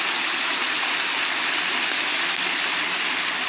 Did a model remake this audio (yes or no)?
no